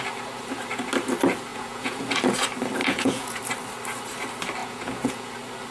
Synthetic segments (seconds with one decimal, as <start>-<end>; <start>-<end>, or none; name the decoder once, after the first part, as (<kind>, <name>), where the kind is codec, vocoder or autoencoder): 1.5-2.0 (vocoder, Vocos); 2.8-3.4; 4.6-5.3